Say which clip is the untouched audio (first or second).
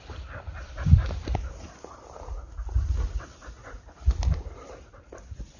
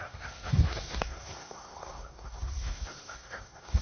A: first